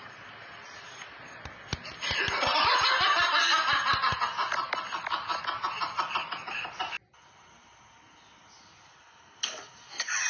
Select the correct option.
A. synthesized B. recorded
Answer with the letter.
B